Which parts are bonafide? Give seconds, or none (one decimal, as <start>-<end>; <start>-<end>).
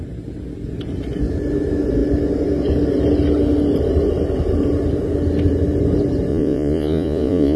0.0-6.3